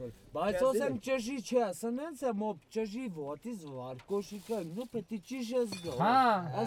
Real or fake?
real